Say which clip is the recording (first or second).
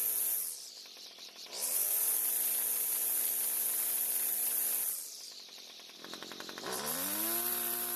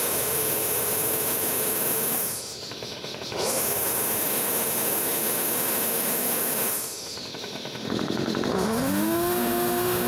first